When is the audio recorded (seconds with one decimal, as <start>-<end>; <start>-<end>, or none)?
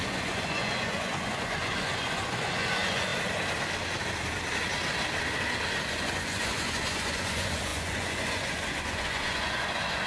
3.1-5.9